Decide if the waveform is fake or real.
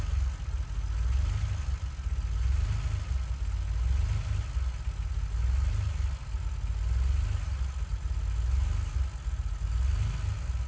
real